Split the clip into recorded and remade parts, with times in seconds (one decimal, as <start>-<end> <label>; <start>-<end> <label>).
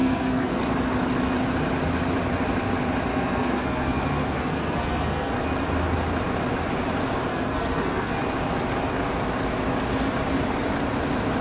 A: 0.0-0.6 remade; 0.6-3.1 recorded; 3.1-5.3 remade; 5.3-7.3 recorded; 7.3-8.2 remade; 8.2-11.4 recorded